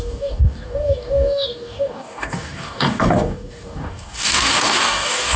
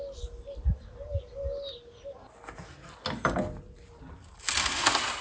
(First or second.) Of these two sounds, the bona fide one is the second